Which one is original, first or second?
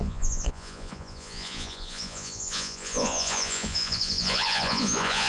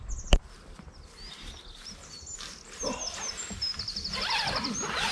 second